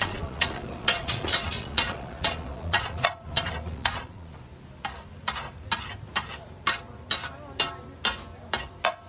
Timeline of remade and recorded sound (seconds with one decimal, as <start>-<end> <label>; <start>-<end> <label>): 0.0-4.4 remade; 4.4-9.1 recorded